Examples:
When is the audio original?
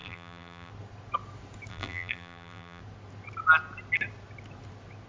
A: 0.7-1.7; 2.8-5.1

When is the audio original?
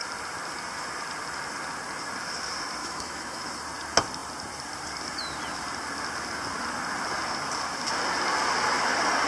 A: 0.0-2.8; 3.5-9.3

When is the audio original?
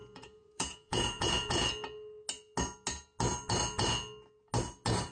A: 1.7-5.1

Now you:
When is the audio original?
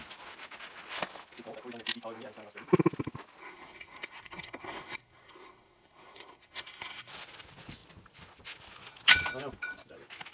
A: 0.0-3.4; 7.1-10.3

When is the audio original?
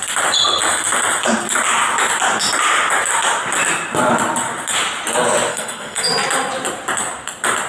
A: 0.0-5.5; 6.1-7.7